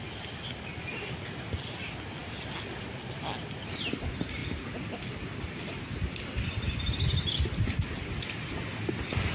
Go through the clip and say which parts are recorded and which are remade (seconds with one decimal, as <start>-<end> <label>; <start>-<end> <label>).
0.0-9.3 recorded